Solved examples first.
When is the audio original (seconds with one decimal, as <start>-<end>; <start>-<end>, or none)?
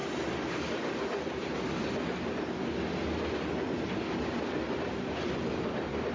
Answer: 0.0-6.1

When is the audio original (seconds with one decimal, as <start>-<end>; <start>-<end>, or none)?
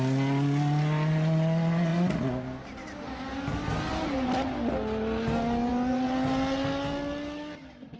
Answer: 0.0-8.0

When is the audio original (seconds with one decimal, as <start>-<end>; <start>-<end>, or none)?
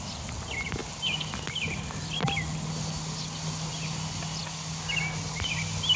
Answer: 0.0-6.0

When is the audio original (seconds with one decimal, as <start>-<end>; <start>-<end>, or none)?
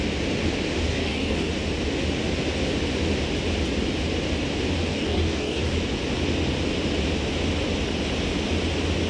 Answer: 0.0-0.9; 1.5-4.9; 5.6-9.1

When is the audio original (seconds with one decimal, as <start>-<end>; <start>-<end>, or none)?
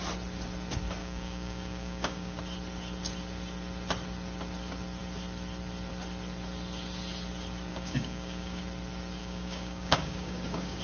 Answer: 0.0-1.0; 2.4-7.7; 8.6-9.2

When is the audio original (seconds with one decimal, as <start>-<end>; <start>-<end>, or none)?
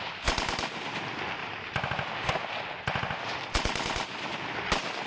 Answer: 0.0-5.1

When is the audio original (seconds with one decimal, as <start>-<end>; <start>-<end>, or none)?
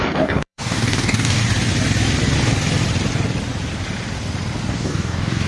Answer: 1.4-4.7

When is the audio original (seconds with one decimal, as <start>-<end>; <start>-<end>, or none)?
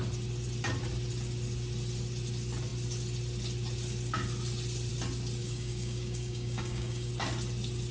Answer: 0.0-5.4; 7.1-7.9